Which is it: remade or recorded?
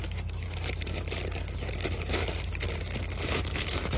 remade